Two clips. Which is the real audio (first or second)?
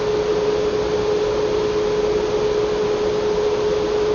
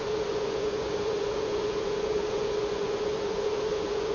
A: first